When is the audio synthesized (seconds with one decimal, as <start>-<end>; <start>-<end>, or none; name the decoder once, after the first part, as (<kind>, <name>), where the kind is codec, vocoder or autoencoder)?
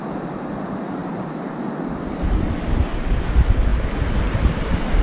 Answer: none